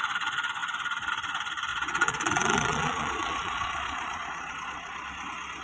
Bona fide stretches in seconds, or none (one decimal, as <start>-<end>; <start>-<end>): 0.0-1.7; 5.1-5.6